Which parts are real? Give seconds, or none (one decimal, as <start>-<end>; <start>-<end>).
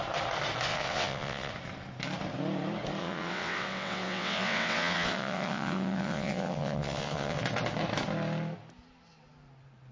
0.0-0.7; 1.5-3.0; 7.4-9.9